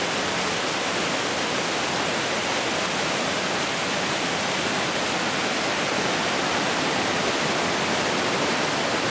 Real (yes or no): yes